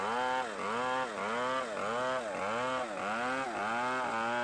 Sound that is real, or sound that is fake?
real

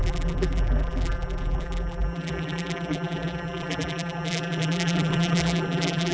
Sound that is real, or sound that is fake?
fake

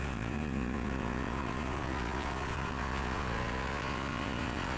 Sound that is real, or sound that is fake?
fake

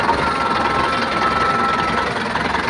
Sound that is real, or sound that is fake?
real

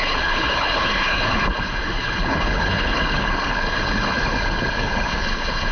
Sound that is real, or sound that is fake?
fake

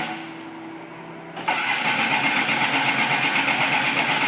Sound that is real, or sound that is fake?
real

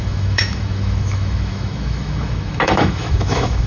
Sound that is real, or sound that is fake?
fake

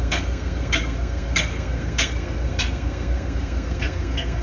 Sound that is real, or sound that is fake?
fake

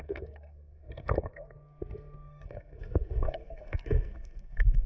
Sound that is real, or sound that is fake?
fake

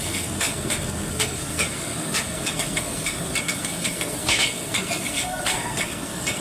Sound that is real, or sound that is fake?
fake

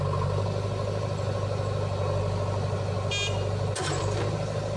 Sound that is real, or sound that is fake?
real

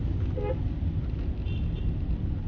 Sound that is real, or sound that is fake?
real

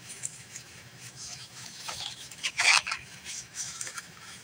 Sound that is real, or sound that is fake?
fake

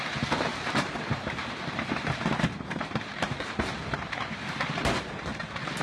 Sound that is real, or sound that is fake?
fake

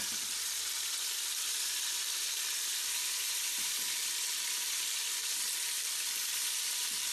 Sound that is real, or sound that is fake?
fake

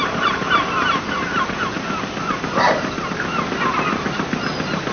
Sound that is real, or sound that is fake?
real